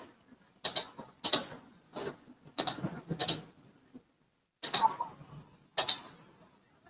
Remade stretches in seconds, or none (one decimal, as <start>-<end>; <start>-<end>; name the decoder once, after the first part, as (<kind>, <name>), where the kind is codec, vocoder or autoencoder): 1.4-3.0 (vocoder, Vocos)